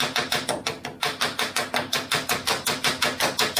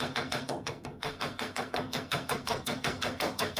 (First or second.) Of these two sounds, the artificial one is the second